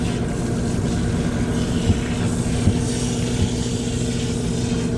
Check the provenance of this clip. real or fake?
real